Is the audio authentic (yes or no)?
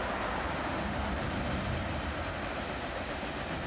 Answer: yes